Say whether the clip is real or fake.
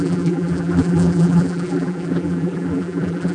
fake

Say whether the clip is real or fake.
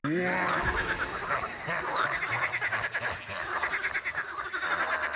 real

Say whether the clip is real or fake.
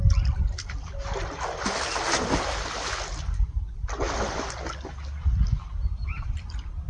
real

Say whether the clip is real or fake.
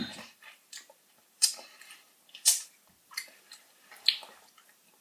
fake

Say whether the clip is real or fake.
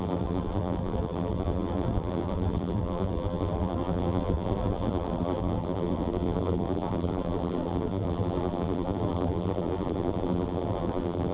fake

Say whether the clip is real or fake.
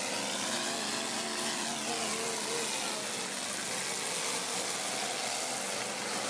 real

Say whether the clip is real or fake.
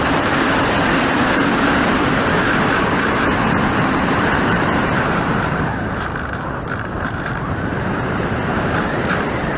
fake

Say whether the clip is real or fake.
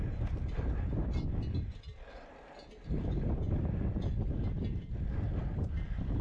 real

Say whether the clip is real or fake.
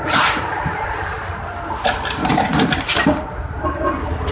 fake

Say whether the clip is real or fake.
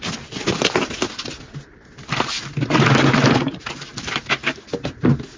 real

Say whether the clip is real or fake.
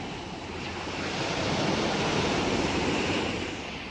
real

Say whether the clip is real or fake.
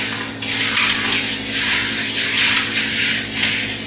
real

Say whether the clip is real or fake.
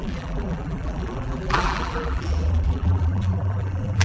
fake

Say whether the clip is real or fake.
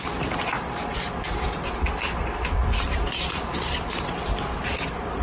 real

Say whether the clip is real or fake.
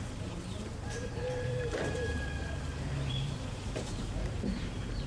fake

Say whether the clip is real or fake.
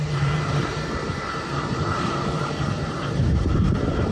fake